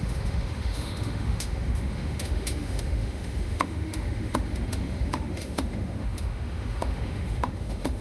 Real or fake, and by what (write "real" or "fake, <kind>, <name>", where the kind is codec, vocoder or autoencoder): fake, autoencoder, DAC-VAE